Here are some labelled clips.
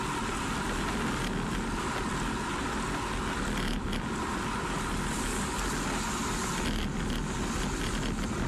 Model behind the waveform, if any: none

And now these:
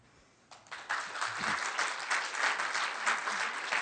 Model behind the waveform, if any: none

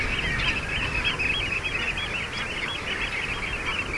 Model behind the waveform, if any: none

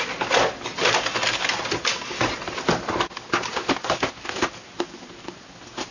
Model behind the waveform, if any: none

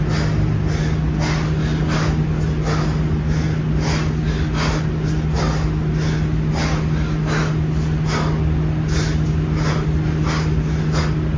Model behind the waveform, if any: none